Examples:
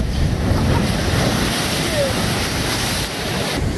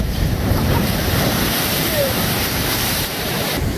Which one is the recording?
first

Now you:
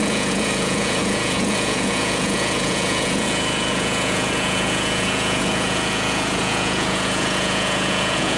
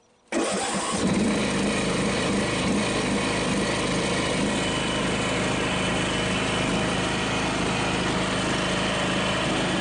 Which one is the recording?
second